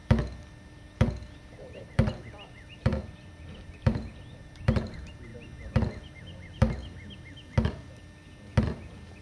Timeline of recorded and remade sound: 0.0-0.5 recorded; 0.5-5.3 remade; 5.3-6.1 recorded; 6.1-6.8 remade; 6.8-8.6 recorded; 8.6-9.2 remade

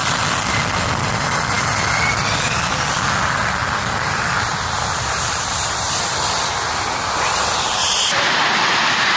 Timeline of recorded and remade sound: 0.0-9.2 remade

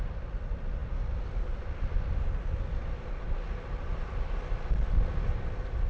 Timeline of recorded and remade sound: 0.0-5.9 recorded